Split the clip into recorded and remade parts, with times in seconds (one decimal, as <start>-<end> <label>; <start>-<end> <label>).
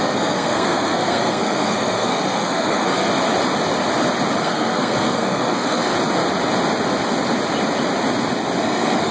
0.0-3.1 remade; 3.1-4.4 recorded; 4.4-5.9 remade; 5.9-8.6 recorded; 8.6-9.1 remade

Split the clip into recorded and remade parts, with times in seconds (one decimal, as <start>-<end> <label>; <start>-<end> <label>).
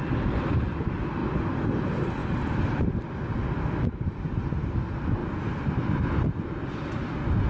0.0-7.5 recorded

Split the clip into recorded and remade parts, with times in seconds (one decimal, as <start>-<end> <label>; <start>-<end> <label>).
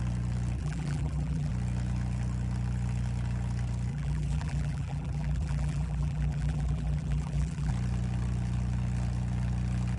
0.0-0.6 recorded; 0.6-1.5 remade; 1.5-3.9 recorded; 3.9-7.7 remade; 7.7-10.0 recorded